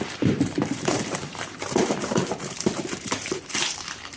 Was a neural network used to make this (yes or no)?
yes